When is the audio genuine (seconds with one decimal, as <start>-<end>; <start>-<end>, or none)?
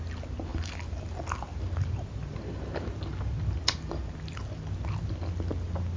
0.0-0.5; 1.1-6.0